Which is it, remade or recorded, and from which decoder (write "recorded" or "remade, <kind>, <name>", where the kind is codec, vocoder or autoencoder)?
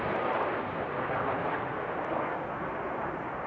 recorded